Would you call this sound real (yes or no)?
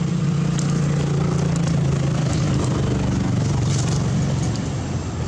yes